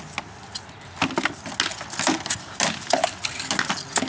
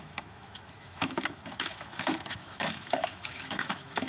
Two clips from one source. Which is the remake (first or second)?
second